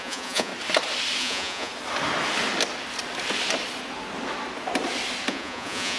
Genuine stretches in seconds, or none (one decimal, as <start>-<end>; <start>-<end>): 0.5-1.2; 1.7-5.3